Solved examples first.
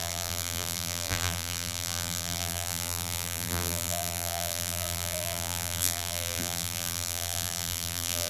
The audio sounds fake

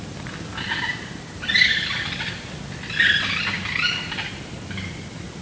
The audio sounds real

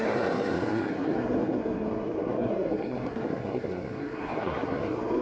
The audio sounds fake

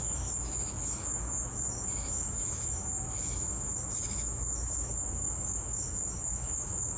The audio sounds fake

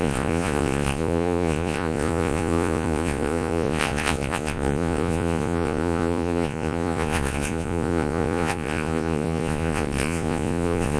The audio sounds fake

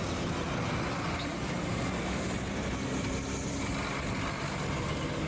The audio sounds real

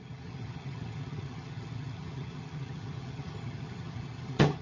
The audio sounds fake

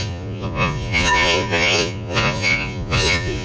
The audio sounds fake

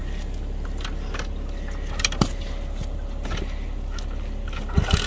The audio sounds real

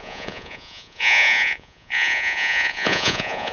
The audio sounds fake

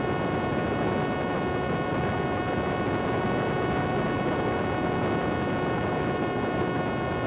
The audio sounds real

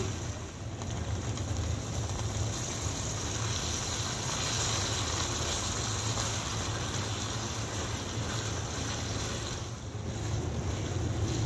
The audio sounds real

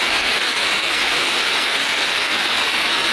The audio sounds fake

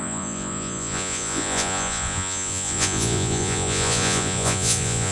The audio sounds fake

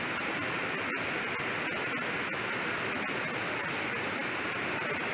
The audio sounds real